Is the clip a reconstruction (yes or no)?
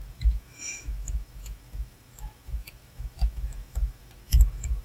yes